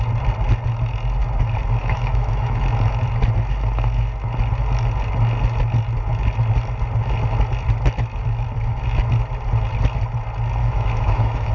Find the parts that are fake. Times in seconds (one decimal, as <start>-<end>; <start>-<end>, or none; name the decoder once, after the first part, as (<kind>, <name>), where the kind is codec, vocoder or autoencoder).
1.8-2.6 (autoencoder, DAC-VAE); 10.6-11.5